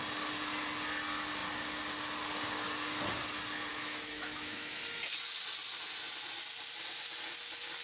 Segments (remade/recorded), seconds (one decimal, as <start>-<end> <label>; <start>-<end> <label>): 0.0-3.7 recorded; 3.7-4.8 remade; 4.8-7.8 recorded